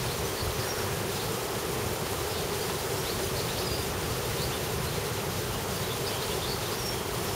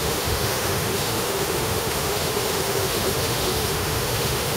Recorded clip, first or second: first